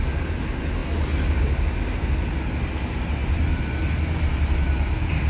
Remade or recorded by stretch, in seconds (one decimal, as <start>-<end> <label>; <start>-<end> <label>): 0.0-5.3 recorded